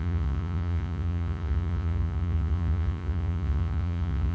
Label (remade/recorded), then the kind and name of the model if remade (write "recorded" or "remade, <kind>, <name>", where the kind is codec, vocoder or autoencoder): remade, vocoder, Vocos